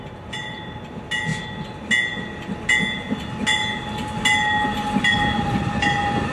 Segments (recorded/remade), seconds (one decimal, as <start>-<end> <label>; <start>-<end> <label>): 0.0-6.3 recorded